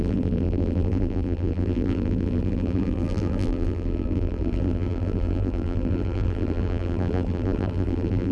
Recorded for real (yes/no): no